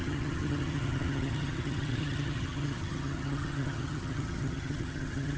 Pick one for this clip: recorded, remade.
remade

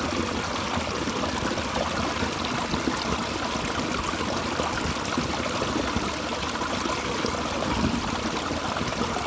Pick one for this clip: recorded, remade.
recorded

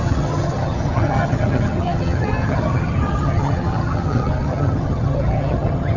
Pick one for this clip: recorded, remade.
remade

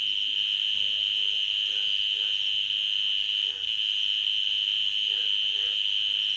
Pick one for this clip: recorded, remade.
recorded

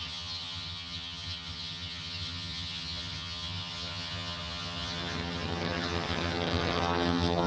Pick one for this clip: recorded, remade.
remade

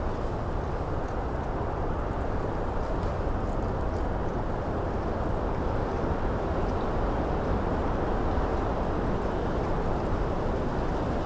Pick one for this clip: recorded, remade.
recorded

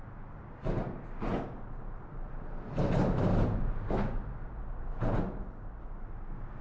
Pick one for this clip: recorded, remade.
recorded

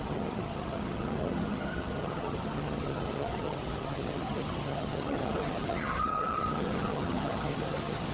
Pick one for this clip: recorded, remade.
remade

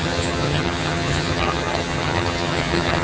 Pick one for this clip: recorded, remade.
remade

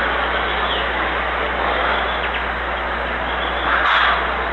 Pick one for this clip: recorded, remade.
recorded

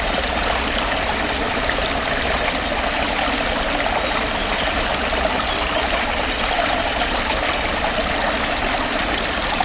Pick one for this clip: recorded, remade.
recorded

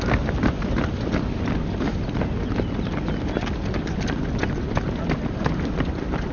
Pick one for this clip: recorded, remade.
recorded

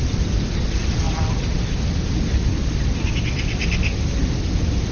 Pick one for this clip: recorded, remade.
recorded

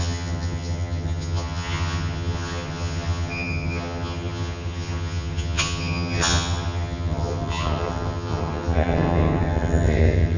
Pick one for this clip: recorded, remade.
remade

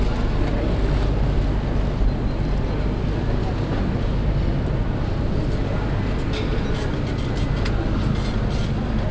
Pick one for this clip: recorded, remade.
recorded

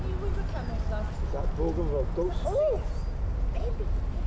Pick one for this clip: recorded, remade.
recorded